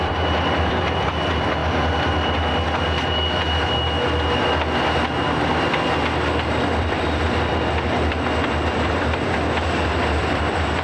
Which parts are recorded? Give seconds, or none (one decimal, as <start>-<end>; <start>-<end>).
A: 1.6-6.8